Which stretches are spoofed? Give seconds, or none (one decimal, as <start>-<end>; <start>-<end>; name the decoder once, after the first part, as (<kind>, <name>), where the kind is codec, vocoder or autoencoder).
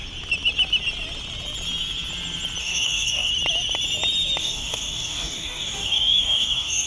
2.6-3.3 (codec, DAC); 4.4-6.9